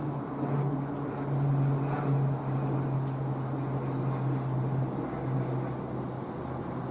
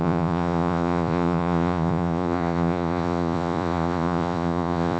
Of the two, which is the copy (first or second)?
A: second